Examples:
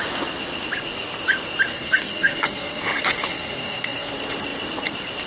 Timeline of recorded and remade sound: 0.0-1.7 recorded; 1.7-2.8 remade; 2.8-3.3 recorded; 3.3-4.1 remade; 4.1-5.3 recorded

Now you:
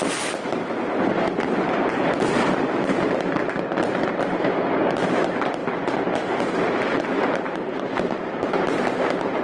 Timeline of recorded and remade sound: 0.0-5.6 remade; 5.6-6.4 recorded; 6.4-9.4 remade

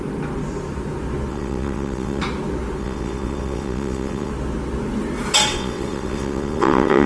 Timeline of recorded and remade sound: 0.0-1.3 recorded; 1.3-2.2 remade; 2.2-2.8 recorded; 2.8-4.3 remade; 4.3-5.5 recorded; 5.5-7.1 remade

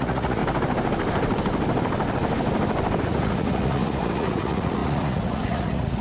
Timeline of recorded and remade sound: 0.0-0.4 remade; 0.4-3.0 recorded; 3.0-6.0 remade

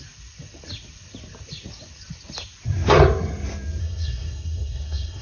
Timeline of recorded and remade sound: 0.0-3.8 recorded; 3.8-5.2 remade